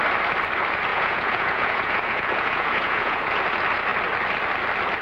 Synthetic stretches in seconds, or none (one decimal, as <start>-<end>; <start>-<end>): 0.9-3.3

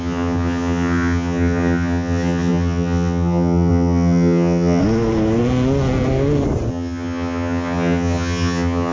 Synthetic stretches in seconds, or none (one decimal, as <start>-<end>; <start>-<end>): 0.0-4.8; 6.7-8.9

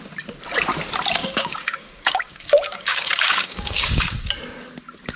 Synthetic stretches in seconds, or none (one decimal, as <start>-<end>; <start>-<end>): 1.2-4.3

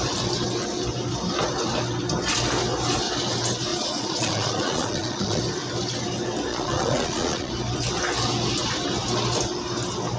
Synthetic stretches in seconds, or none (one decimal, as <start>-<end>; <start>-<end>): 3.7-5.4; 6.5-7.5

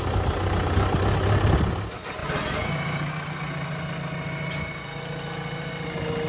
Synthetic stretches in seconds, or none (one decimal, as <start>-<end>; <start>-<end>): none

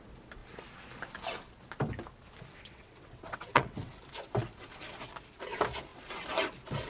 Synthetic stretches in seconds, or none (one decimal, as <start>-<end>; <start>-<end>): 2.5-3.9

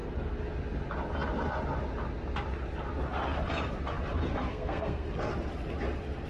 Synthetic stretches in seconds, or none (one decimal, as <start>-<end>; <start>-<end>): 4.5-5.1